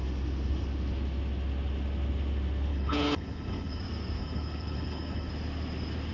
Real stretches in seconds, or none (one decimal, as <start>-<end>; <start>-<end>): 0.0-2.7; 3.8-4.2; 5.3-6.1